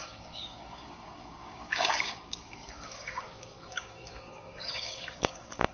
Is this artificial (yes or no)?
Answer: yes